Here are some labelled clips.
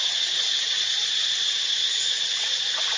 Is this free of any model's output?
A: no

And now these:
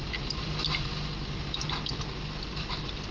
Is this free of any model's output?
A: yes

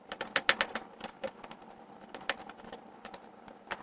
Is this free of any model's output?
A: yes